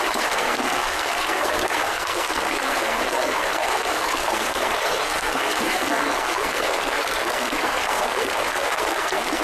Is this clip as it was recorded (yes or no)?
no